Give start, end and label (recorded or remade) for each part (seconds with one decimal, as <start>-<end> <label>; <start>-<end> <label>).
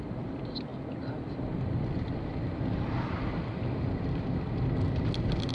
0.0-5.5 recorded